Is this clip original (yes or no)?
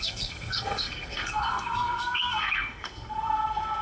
no